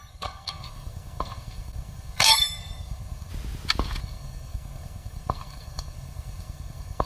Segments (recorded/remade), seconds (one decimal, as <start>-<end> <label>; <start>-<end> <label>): 0.0-3.3 remade; 3.3-4.0 recorded; 4.0-7.1 remade